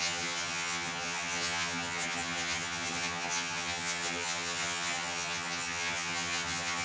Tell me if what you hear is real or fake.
fake